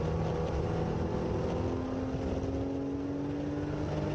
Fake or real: real